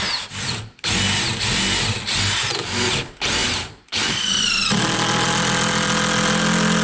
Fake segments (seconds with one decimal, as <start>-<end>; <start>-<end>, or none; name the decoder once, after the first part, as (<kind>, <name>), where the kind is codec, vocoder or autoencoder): none